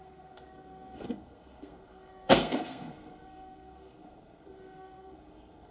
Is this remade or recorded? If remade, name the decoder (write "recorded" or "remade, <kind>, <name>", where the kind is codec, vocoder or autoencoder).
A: remade, codec, SNAC